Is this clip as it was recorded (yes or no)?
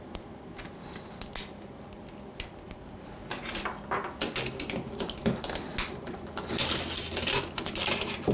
yes